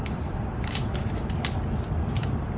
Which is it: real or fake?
fake